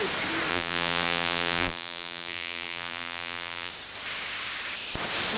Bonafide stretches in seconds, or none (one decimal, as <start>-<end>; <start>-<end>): 0.0-0.5; 3.7-5.4